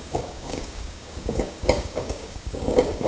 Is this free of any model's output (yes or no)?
no